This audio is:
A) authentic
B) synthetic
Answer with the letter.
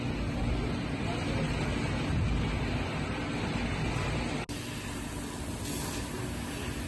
A